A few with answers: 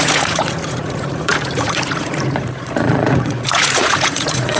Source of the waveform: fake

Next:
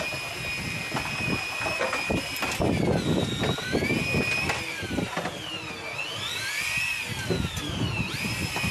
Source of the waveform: real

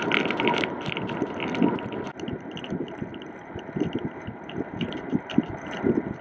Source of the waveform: real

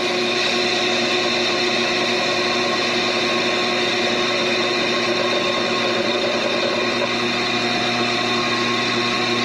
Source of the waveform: real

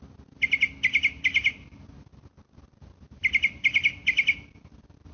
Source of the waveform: real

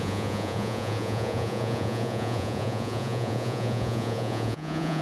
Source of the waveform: fake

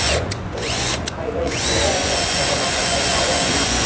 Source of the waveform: fake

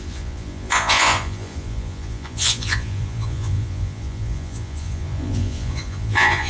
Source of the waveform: fake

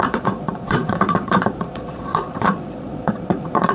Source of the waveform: fake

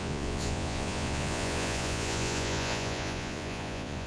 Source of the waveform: fake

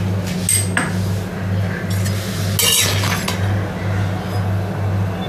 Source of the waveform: real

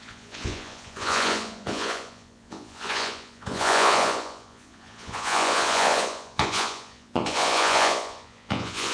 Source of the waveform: fake